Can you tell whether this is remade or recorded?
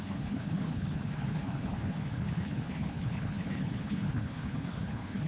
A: remade